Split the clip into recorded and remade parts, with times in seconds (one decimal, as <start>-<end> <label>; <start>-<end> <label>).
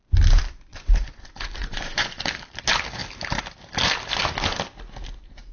0.0-0.7 recorded; 0.7-2.2 remade; 2.2-5.5 recorded